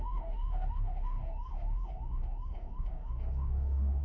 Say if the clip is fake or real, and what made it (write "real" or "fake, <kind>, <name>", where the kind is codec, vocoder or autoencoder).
fake, autoencoder, DAC-VAE